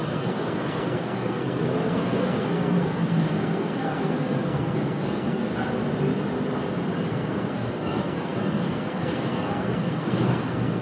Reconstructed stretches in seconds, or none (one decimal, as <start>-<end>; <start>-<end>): 0.0-5.5; 7.1-10.8

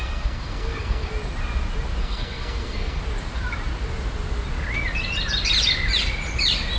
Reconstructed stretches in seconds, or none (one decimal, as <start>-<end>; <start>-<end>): 0.0-1.1; 2.0-3.0

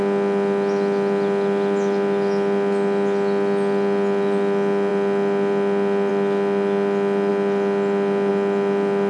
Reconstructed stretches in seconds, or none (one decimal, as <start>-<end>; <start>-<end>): none

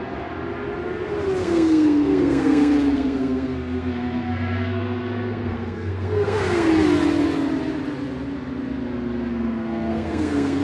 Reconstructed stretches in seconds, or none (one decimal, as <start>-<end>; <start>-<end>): 1.4-6.7; 9.3-10.6

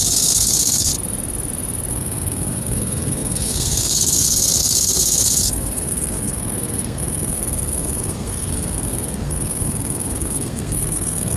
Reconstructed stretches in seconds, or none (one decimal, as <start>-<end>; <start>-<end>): 0.0-0.9; 1.9-11.4

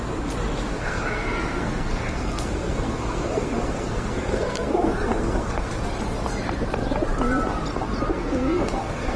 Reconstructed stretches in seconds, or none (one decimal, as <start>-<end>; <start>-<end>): 0.7-5.8; 8.1-9.2

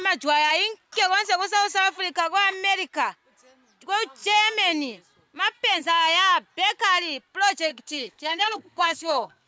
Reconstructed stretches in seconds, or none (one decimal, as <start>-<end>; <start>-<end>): 7.7-9.5

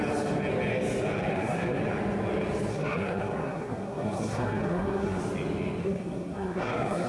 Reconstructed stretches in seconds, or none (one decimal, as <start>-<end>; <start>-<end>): 1.3-1.8; 2.7-5.2; 5.8-7.1